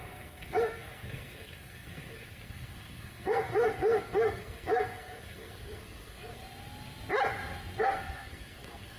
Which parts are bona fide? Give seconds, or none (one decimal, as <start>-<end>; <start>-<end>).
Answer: 6.4-7.8